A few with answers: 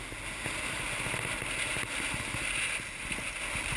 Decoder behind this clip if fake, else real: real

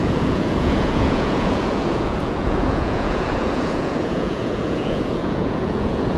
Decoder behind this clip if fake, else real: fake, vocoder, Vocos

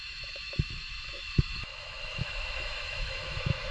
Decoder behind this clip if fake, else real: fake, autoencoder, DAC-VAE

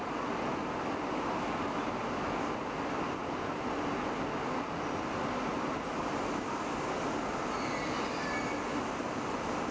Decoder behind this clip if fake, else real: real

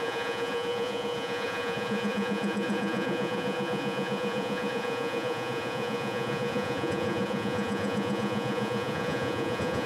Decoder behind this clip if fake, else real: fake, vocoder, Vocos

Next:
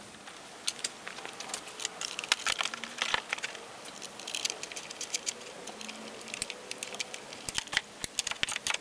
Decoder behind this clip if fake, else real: real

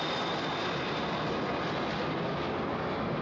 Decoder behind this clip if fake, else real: real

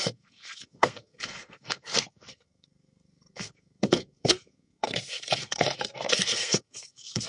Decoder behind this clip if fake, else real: fake, codec, SNAC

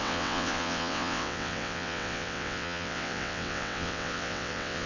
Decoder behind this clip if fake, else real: fake, vocoder, WaveNeXt